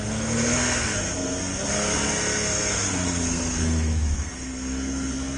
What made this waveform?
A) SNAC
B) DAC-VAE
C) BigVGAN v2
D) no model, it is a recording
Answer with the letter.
A